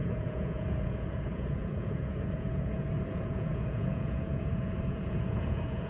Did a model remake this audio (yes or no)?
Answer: yes